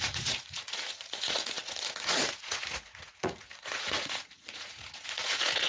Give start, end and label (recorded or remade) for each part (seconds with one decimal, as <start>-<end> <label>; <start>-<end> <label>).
0.0-5.7 remade